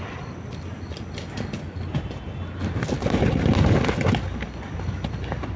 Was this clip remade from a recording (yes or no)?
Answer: no